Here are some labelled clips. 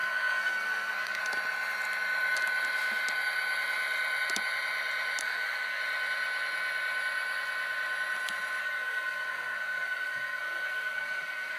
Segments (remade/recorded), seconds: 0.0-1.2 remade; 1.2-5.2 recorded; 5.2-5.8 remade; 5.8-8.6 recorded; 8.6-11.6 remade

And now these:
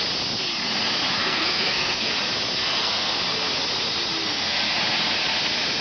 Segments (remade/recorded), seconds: 0.0-1.2 recorded; 1.2-2.1 remade; 2.1-2.6 recorded; 2.6-3.1 remade; 3.1-4.2 recorded; 4.2-4.7 remade; 4.7-5.8 recorded